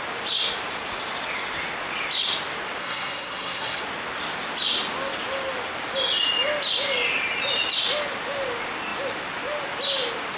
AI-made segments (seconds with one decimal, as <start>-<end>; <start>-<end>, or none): 2.8-3.8